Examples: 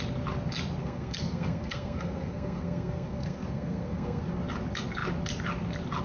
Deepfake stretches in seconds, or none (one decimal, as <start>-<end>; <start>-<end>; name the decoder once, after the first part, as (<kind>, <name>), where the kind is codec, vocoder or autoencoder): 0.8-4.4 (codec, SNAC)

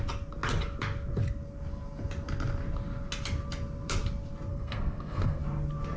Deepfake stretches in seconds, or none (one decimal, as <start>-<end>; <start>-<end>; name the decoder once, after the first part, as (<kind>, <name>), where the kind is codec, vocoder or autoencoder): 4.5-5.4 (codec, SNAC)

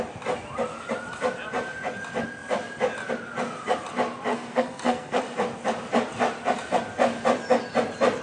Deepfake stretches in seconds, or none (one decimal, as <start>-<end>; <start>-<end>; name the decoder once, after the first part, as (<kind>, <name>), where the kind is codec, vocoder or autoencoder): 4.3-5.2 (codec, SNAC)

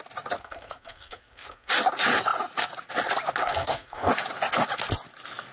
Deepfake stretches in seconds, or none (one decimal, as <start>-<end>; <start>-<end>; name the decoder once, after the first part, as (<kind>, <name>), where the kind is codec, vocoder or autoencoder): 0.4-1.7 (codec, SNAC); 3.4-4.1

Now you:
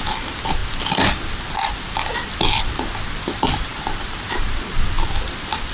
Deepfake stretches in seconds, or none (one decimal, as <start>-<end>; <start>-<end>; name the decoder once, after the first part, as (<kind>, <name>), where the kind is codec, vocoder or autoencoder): none

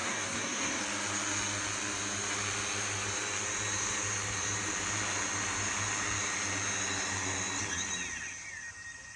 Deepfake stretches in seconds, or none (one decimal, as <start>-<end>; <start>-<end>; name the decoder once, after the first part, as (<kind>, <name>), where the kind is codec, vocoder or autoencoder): 0.0-0.8 (codec, SNAC)

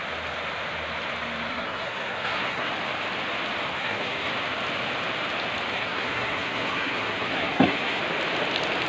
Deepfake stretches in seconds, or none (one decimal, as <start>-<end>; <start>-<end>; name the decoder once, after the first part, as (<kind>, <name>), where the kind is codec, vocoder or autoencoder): 1.5-2.7 (codec, SNAC); 3.7-4.3; 5.7-8.0

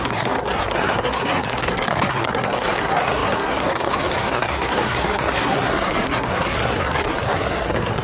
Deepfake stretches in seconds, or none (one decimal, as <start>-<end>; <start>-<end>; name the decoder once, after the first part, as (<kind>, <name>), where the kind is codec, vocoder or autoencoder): 0.0-8.0 (codec, SNAC)